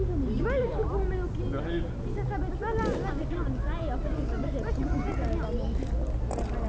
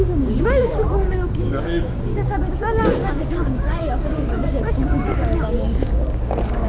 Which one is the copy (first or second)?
second